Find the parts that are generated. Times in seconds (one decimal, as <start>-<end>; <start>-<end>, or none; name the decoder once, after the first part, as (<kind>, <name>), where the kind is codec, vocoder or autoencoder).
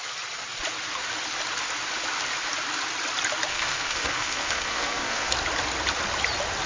3.5-5.3 (codec, SNAC)